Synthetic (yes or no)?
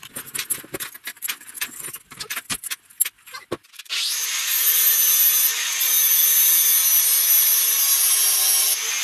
no